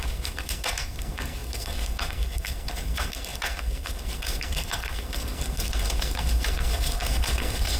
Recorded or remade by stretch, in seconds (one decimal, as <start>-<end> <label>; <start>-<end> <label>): 0.0-7.8 remade